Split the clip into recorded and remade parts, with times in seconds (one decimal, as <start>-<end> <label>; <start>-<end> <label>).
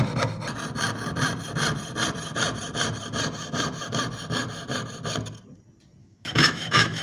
0.0-6.0 recorded; 6.0-7.0 remade